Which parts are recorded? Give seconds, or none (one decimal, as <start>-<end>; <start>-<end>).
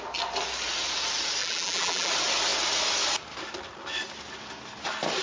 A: 0.0-1.4; 2.1-5.2